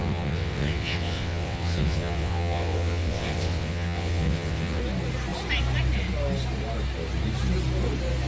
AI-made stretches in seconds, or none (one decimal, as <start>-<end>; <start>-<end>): 0.0-4.8